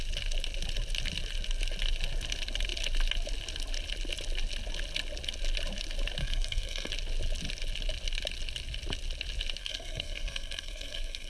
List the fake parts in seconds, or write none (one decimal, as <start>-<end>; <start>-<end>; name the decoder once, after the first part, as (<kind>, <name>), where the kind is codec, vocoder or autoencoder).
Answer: 6.2-6.9 (codec, SNAC); 9.6-11.3